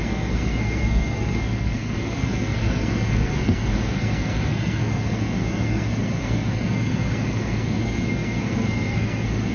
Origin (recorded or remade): remade